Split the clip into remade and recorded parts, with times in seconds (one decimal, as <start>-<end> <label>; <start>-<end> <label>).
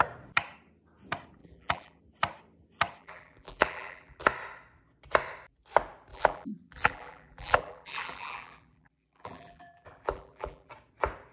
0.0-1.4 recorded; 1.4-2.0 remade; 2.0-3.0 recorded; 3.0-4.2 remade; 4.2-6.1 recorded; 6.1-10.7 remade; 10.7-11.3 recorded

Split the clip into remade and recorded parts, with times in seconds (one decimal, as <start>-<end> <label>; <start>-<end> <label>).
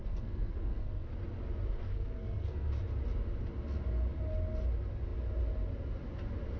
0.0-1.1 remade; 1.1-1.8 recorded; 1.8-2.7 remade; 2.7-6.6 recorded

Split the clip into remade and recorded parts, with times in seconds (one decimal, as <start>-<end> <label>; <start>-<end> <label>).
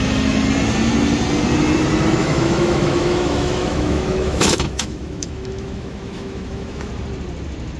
0.0-2.2 recorded; 2.2-6.9 remade; 6.9-7.8 recorded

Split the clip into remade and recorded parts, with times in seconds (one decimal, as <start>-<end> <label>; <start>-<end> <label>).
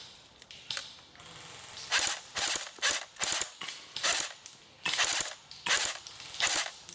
0.0-6.9 recorded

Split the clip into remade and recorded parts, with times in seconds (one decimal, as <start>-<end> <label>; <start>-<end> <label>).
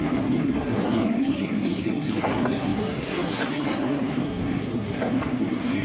0.0-5.8 remade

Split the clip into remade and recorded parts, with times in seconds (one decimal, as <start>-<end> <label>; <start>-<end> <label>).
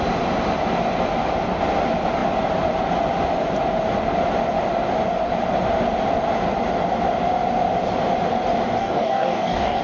0.0-8.8 recorded; 8.8-9.8 remade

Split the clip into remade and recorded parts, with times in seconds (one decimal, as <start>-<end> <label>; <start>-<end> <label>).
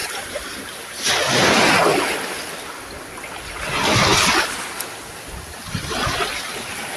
0.0-1.1 remade; 1.1-7.0 recorded